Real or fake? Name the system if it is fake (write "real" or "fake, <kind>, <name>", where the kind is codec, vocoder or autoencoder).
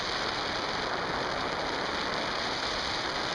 real